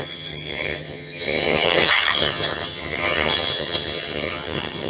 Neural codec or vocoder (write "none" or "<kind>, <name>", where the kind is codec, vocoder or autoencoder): vocoder, HiFi-GAN